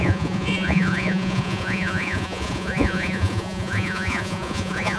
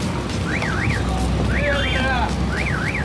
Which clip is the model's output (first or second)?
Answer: first